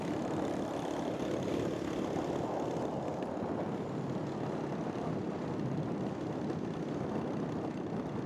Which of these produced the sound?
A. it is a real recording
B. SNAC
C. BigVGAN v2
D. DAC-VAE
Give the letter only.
A